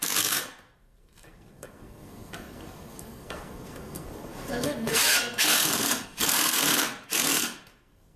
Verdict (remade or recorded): remade